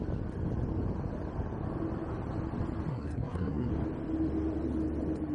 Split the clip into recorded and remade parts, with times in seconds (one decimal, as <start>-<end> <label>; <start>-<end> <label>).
0.0-2.9 recorded; 2.9-3.7 remade; 3.7-5.3 recorded